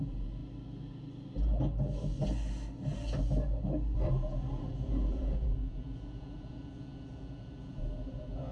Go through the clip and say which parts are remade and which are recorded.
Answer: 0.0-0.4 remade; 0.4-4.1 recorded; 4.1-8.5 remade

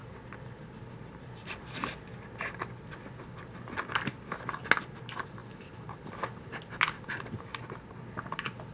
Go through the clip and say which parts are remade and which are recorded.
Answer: 0.0-1.6 remade; 1.6-8.7 recorded

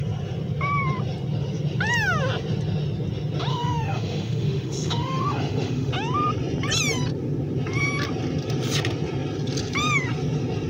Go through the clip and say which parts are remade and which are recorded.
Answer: 0.0-3.5 recorded; 3.5-5.9 remade; 5.9-10.7 recorded

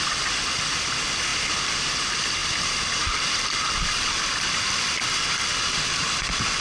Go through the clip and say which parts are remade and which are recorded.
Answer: 0.0-1.3 recorded; 1.3-1.8 remade; 1.8-2.4 recorded; 2.4-5.8 remade; 5.8-6.6 recorded

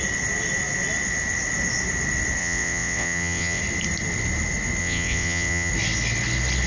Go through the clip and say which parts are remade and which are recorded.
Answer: 0.0-2.4 recorded; 2.4-3.6 remade; 3.6-4.8 recorded; 4.8-5.7 remade; 5.7-6.7 recorded